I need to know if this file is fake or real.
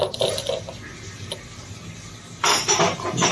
real